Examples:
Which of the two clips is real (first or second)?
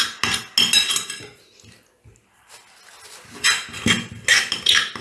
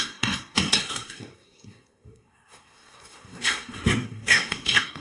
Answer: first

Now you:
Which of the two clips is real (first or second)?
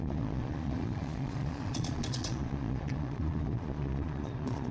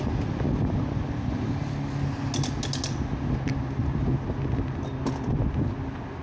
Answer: second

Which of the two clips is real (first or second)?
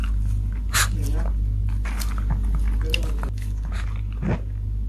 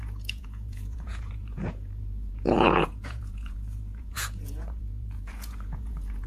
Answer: first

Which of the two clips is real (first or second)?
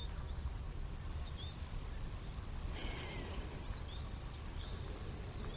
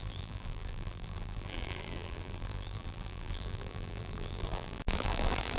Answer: first